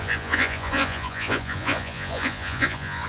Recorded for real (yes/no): no